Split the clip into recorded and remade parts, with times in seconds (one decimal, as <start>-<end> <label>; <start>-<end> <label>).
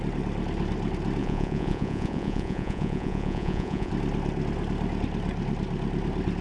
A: 0.0-1.2 recorded; 1.2-3.9 remade; 3.9-6.4 recorded